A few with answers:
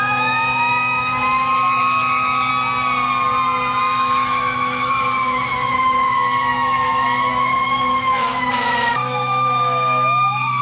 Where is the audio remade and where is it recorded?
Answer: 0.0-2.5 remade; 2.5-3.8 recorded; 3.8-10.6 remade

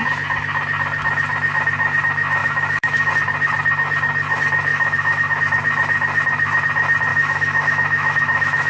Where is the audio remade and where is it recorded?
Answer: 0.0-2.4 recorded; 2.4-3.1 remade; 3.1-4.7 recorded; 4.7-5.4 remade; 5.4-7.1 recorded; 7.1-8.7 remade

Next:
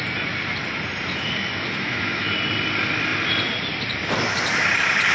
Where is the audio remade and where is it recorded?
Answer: 0.0-1.1 recorded; 1.1-2.3 remade; 2.3-5.1 recorded

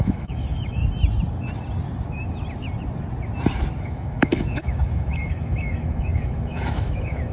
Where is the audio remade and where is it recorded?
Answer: 0.0-0.8 remade; 0.8-3.8 recorded; 3.8-7.3 remade

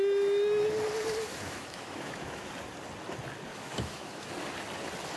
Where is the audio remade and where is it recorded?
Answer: 0.0-1.3 recorded; 1.3-2.5 remade; 2.5-3.5 recorded; 3.5-4.3 remade; 4.3-5.2 recorded

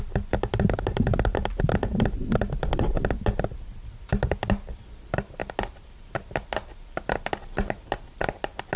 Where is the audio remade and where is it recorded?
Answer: 0.0-8.8 recorded